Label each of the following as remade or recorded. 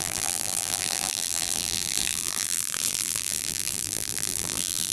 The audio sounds remade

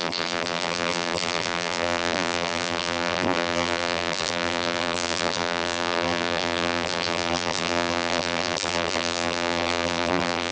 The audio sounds remade